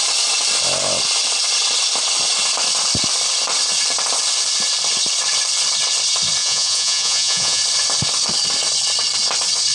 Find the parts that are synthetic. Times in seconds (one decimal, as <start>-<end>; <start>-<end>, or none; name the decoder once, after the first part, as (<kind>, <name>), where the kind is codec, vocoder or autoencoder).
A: 6.4-7.6 (vocoder, Vocos)